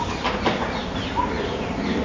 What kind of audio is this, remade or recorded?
recorded